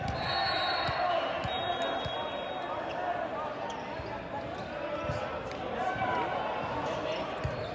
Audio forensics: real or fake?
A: real